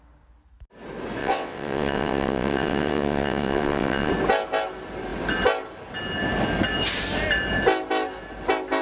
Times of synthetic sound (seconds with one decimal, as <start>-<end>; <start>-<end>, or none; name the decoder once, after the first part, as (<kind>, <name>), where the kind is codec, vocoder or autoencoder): 1.2-4.1 (vocoder, WaveNeXt)